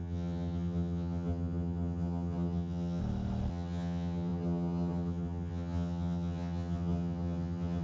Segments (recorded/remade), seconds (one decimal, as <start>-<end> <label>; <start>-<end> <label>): 0.0-3.0 remade; 3.0-3.5 recorded; 3.5-7.8 remade